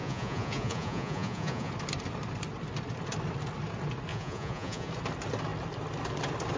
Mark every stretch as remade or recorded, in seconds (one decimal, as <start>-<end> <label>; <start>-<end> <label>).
0.0-1.7 remade; 1.7-4.1 recorded; 4.1-4.9 remade; 4.9-6.6 recorded